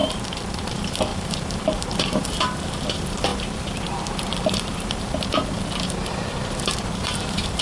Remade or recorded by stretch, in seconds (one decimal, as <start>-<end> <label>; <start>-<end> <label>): 0.0-0.7 recorded; 0.7-1.1 remade; 1.1-1.7 recorded; 1.7-3.3 remade; 3.3-7.6 recorded